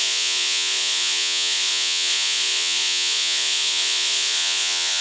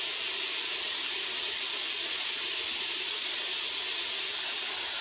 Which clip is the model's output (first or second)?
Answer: first